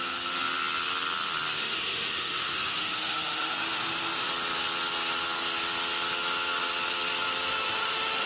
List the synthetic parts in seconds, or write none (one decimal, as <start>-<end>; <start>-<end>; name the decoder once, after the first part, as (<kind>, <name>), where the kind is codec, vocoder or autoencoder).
1.6-4.3 (autoencoder, DAC-VAE); 7.5-8.3